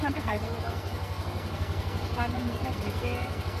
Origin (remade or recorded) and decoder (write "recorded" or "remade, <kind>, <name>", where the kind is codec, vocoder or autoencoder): remade, codec, SNAC